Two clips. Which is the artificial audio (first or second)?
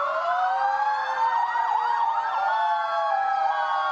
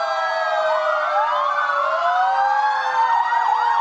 first